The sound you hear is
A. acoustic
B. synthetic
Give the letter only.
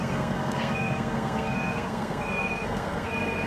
B